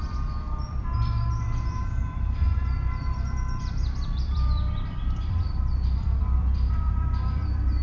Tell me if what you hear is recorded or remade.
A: remade